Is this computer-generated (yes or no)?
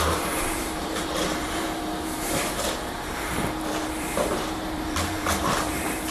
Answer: yes